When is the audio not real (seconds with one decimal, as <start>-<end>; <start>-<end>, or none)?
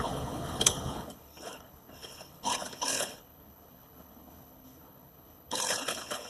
0.0-6.3